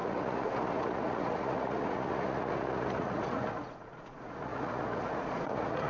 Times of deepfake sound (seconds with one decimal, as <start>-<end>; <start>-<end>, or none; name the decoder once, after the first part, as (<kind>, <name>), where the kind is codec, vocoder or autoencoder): 0.0-5.9 (vocoder, Vocos)